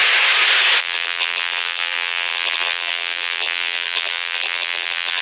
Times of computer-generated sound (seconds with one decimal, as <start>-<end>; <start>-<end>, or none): 0.8-5.2